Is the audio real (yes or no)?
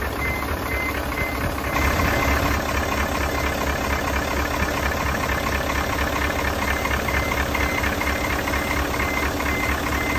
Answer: yes